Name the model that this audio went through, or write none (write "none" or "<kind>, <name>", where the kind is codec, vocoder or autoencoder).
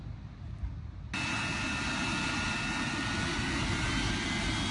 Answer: none